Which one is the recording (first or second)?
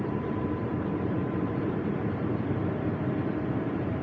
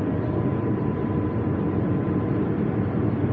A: second